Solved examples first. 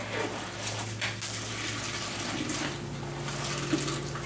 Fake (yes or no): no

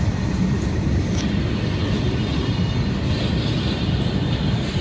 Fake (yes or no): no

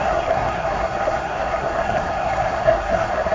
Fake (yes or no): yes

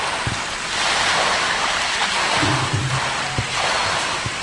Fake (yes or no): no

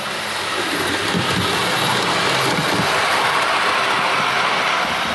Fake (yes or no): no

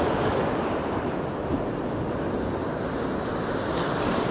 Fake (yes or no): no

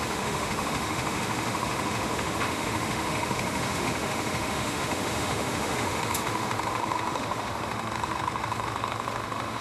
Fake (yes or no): yes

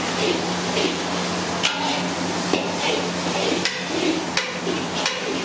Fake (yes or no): no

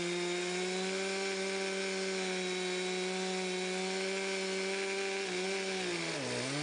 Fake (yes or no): no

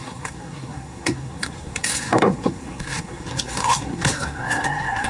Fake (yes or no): yes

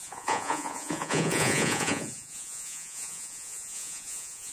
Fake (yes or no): yes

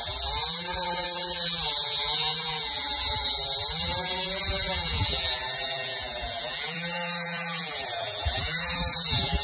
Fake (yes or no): yes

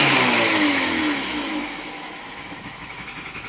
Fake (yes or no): yes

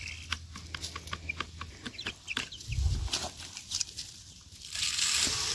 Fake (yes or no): no